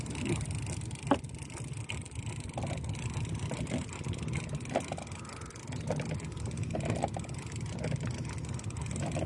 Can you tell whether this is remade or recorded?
recorded